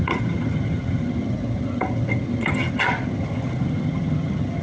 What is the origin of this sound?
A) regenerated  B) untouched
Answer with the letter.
A